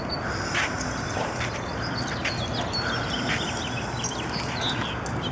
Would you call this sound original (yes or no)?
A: yes